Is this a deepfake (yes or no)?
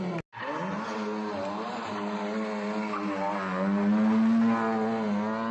no